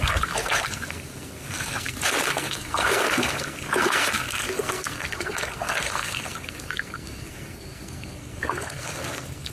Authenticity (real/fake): fake